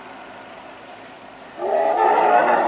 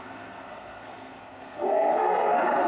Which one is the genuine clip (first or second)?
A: first